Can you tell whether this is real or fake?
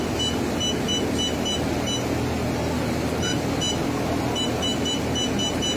real